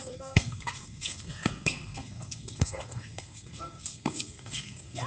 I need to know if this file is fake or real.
fake